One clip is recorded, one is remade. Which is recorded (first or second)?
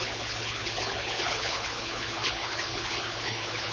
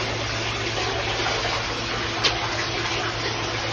second